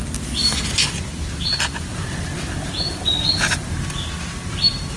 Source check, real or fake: real